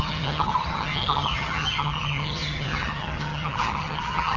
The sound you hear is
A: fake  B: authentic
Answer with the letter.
A